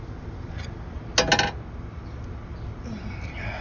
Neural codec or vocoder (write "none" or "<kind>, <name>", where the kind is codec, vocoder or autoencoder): none